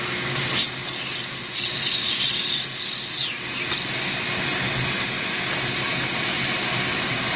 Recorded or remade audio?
recorded